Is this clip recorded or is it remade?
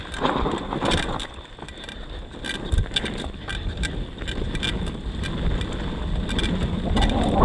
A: recorded